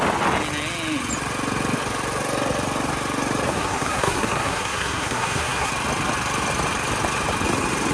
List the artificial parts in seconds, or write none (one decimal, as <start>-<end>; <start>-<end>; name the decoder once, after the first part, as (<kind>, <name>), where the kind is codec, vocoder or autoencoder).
3.5-5.7 (codec, SNAC)